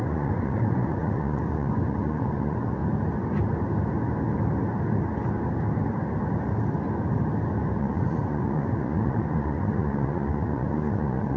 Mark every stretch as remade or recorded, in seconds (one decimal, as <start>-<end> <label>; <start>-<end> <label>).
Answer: 0.0-2.8 remade; 2.8-7.8 recorded; 7.8-11.4 remade